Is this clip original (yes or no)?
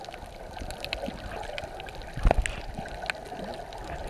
yes